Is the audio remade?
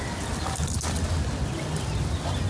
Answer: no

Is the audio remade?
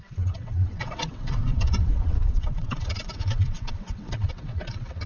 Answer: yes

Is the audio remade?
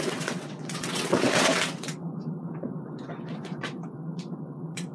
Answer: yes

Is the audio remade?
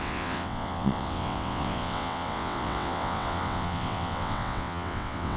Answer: yes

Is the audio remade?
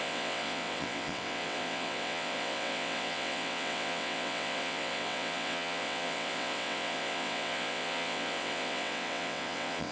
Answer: yes